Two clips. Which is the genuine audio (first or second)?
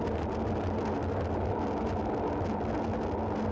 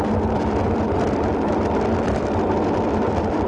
first